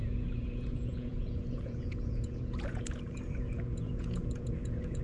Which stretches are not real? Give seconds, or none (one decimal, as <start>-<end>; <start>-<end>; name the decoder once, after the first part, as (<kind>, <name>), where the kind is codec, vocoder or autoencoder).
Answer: 0.0-5.0 (vocoder, Vocos)

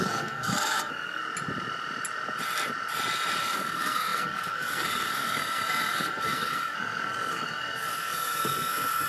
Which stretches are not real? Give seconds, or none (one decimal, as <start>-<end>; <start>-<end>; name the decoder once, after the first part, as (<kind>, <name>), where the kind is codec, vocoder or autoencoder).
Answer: 0.0-1.2 (codec, SNAC); 3.4-9.1

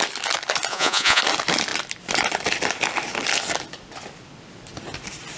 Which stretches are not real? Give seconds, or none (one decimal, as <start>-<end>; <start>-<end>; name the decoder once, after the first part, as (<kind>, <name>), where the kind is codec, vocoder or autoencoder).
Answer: 0.7-1.2 (vocoder, Vocos)

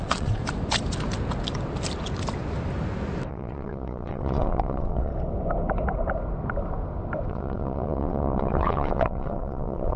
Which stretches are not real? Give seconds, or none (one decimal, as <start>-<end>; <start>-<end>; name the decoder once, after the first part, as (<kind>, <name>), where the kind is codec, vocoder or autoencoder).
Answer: 0.0-0.4 (vocoder, WaveNeXt); 3.3-5.1; 7.3-10.0

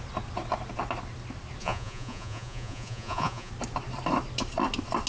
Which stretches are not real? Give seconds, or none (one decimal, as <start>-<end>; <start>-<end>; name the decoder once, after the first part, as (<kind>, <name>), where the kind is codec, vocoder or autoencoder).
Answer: 1.6-3.5 (vocoder, Vocos)

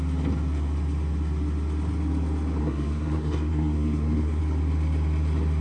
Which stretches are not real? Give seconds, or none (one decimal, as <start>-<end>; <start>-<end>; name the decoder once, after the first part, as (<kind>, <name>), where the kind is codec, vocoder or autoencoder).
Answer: 2.6-4.4 (codec, SNAC)

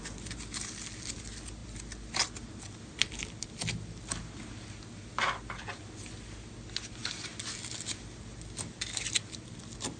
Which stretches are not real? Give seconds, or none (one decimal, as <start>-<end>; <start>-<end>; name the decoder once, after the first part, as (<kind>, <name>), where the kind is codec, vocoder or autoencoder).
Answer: none

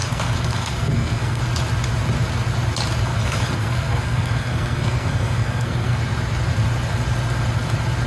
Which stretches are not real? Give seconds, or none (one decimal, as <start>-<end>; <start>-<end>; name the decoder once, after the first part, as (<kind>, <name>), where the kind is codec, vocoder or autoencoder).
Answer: 0.0-1.4 (codec, SNAC); 3.1-6.0